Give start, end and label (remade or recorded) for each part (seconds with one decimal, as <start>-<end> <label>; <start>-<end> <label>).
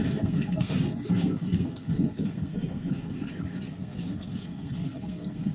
0.0-3.3 remade; 3.3-3.8 recorded; 3.8-5.5 remade